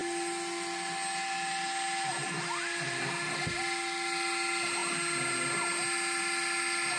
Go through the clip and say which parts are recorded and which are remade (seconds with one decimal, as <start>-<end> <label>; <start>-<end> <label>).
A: 0.0-7.0 recorded